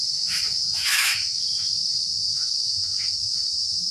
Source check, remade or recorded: remade